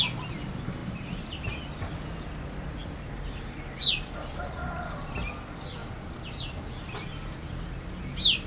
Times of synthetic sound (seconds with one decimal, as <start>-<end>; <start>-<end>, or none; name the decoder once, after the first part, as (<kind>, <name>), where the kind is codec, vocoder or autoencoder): none